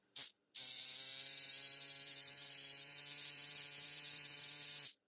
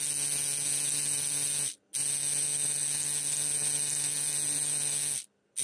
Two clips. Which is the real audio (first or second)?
second